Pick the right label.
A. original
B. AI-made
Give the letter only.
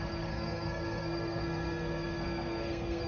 B